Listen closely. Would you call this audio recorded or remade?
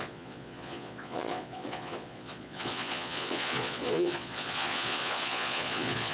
remade